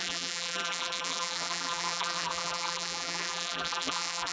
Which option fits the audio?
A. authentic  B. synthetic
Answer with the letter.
B